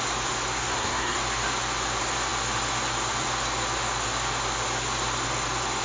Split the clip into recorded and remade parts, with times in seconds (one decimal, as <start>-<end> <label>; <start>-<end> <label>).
0.0-0.6 recorded; 0.6-1.2 remade; 1.2-5.8 recorded

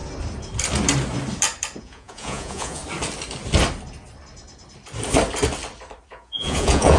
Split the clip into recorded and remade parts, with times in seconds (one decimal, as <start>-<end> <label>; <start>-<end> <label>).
0.0-1.8 recorded; 1.8-2.8 remade; 2.8-6.1 recorded; 6.1-7.0 remade

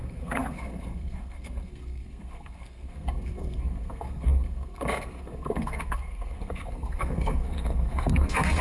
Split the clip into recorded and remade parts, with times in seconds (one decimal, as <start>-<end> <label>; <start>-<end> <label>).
0.0-8.6 remade

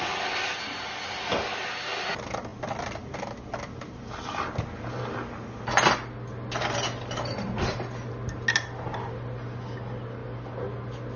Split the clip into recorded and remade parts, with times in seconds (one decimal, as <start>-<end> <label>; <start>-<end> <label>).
0.0-11.2 recorded